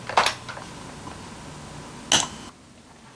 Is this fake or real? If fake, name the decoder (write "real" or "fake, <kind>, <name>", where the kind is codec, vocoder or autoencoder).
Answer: real